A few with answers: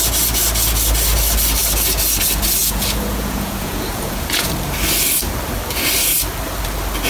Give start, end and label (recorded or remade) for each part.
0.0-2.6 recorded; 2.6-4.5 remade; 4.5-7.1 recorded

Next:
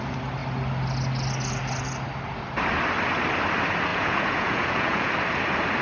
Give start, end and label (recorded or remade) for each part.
0.0-3.9 recorded; 3.9-5.1 remade; 5.1-5.8 recorded

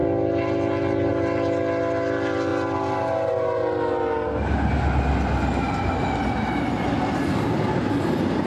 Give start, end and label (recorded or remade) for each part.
0.0-8.5 recorded